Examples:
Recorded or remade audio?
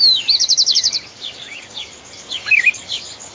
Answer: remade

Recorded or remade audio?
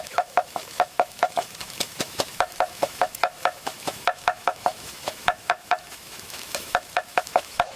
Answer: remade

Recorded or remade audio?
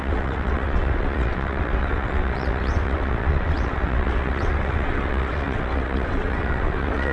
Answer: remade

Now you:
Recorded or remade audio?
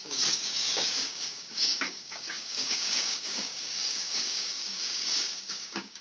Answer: remade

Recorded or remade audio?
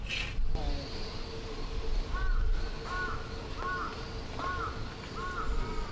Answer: recorded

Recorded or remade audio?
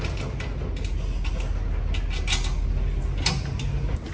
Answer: recorded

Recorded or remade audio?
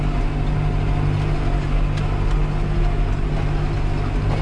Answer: recorded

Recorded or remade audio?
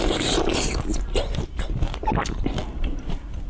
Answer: recorded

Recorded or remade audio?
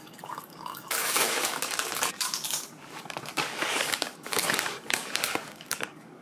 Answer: remade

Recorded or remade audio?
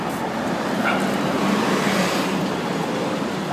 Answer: recorded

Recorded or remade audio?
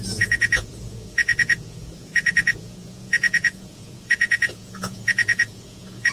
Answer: remade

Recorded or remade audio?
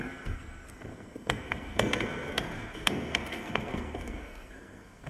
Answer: remade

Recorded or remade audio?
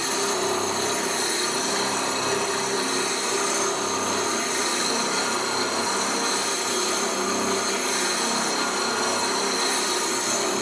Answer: recorded